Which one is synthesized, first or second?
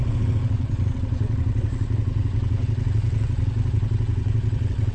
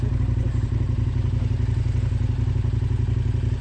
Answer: first